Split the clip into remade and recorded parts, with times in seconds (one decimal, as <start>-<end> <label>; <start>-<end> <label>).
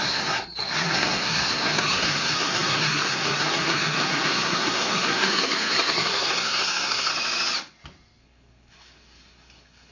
0.0-7.1 remade; 7.1-8.2 recorded; 8.2-9.9 remade